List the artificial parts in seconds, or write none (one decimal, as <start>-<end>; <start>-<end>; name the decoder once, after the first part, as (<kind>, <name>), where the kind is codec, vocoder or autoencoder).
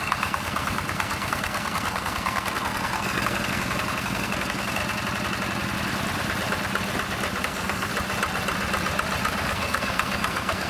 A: 0.0-4.8 (codec, SNAC); 7.4-7.9; 9.5-10.7